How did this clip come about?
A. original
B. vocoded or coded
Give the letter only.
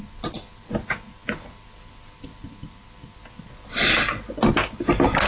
A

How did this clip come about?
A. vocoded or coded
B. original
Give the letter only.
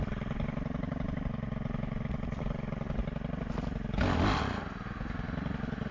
B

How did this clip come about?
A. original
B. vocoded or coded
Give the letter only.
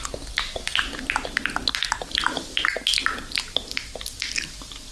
A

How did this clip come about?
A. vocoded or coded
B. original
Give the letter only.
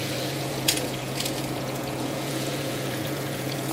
A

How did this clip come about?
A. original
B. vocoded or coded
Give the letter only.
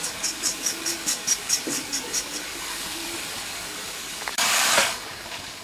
B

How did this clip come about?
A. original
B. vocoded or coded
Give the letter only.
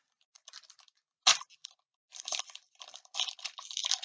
A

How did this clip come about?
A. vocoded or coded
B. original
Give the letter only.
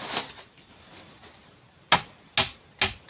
B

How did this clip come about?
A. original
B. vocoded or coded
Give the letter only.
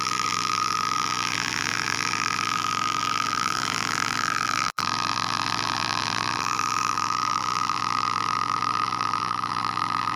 B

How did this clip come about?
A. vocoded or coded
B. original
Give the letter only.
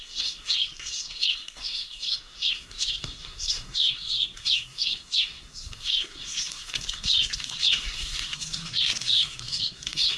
A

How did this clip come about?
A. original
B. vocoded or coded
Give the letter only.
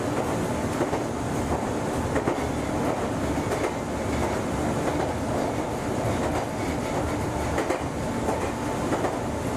A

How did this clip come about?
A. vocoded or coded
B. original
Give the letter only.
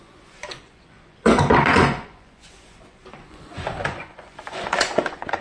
A